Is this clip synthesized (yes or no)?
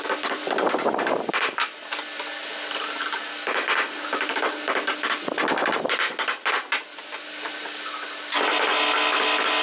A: no